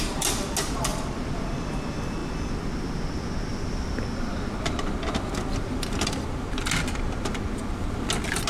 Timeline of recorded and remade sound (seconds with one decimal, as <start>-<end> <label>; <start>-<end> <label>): 0.0-0.9 recorded; 0.9-1.4 remade; 1.4-3.5 recorded; 3.5-6.5 remade; 6.5-8.5 recorded